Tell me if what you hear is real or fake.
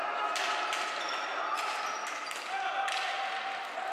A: real